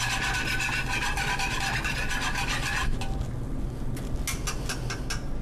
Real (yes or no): yes